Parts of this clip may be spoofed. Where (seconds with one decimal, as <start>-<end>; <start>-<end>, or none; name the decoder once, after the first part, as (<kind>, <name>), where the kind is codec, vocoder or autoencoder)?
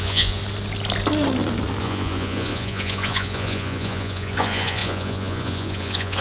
0.0-0.4 (vocoder, Vocos); 1.8-6.2